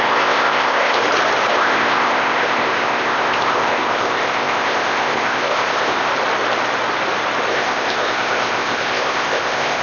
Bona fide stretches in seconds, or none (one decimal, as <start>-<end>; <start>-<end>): 1.0-1.5; 6.1-7.5